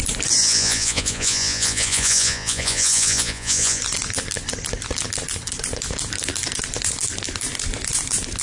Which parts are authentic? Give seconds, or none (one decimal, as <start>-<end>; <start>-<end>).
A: 0.0-0.4; 3.8-8.4

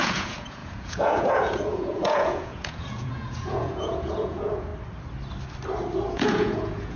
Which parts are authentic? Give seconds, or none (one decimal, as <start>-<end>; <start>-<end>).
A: 4.7-6.1

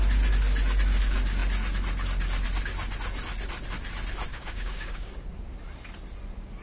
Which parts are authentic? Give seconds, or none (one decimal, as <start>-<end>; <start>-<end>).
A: 0.0-4.3; 5.1-6.6

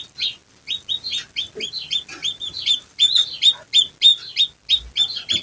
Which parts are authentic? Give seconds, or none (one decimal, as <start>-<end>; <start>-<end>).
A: 0.0-2.2; 2.9-5.4